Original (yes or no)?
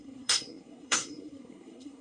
no